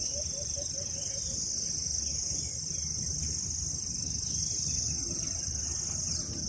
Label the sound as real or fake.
real